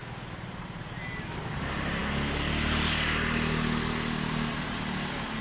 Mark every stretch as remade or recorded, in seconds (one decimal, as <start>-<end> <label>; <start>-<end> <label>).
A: 0.0-5.4 recorded